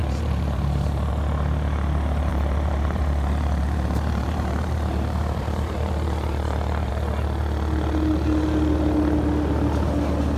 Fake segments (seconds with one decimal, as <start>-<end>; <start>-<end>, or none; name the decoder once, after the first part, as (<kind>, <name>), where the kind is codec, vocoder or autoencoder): 0.0-1.1 (vocoder, BigVGAN v2); 2.3-6.9